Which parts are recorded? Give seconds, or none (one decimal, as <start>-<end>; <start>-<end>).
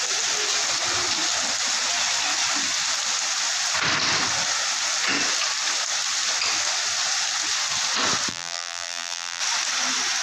0.0-8.3; 9.4-10.2